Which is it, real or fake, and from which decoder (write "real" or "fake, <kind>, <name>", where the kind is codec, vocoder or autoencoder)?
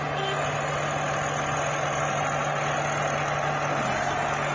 real